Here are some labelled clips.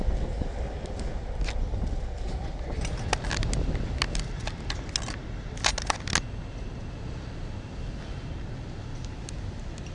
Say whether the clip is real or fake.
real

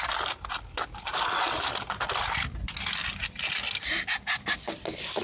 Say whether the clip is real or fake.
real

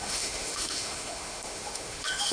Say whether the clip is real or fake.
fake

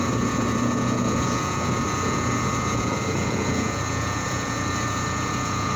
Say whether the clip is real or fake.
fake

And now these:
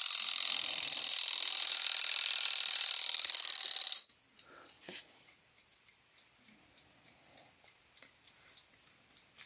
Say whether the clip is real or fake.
real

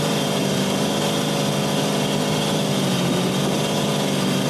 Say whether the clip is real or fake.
real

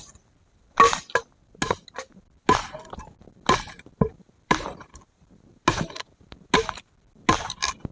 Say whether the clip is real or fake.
real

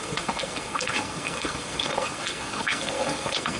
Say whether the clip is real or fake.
fake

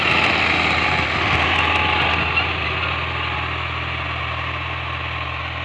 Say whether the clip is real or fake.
real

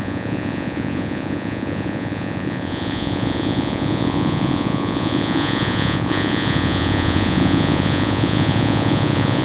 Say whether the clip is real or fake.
fake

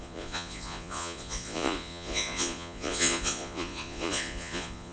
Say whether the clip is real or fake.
fake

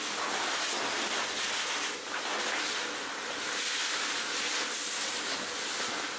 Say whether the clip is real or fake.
real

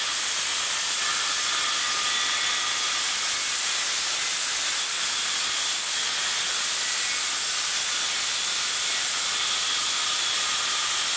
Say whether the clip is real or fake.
real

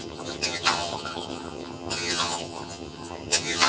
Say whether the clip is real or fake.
fake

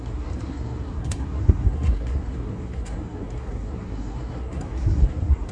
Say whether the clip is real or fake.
fake